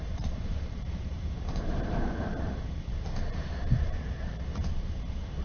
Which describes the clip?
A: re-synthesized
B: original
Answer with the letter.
A